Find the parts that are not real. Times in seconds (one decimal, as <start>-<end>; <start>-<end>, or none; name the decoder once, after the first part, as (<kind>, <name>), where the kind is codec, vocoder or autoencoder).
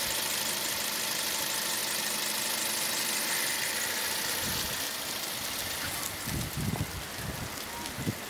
none